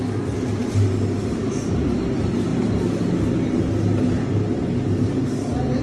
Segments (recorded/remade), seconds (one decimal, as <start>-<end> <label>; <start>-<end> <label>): 0.0-5.8 recorded